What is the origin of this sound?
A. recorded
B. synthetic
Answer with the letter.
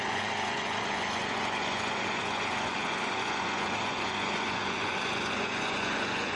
B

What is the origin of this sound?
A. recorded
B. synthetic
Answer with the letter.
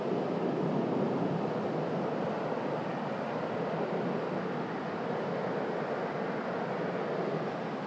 A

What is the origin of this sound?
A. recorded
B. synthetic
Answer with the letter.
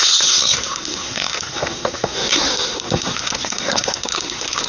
B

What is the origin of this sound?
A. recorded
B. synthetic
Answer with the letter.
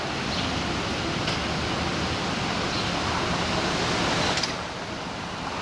A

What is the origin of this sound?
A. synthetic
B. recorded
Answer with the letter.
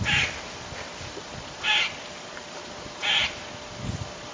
B